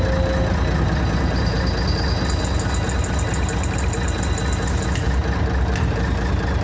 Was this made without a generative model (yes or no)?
yes